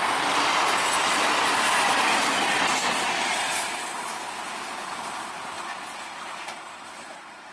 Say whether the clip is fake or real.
real